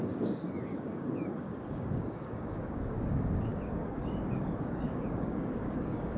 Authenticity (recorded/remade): remade